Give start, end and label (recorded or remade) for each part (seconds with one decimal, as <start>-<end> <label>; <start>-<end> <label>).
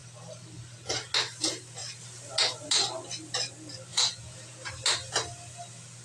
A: 0.0-3.9 recorded; 3.9-4.7 remade; 4.7-6.0 recorded